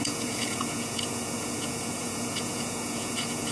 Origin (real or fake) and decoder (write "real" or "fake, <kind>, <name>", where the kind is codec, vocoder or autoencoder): fake, vocoder, Vocos